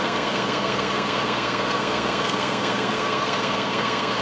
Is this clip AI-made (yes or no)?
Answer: yes